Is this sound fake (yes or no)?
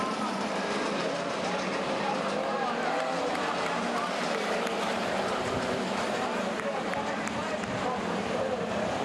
yes